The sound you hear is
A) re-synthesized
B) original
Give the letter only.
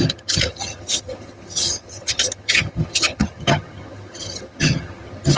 A